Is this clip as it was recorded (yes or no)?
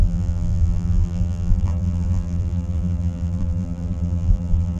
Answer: no